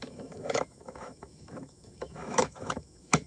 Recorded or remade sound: remade